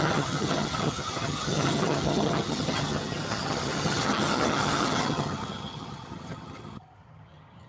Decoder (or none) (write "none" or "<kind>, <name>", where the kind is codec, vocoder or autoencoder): vocoder, HiFi-GAN